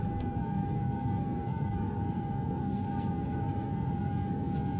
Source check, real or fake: fake